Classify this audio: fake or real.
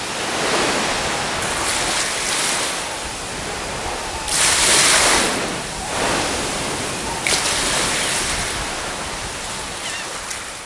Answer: real